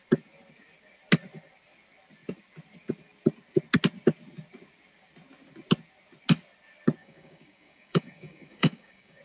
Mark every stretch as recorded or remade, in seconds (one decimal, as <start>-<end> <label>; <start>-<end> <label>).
0.0-7.0 recorded; 7.0-9.2 remade